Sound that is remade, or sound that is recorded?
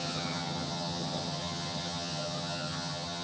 remade